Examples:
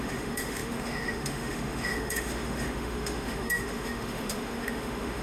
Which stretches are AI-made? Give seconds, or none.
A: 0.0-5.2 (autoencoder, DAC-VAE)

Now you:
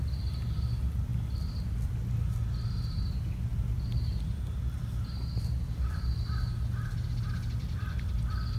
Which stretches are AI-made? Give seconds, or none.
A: none